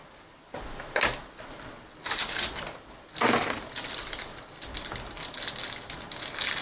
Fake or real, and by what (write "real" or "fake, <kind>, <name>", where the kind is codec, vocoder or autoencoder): real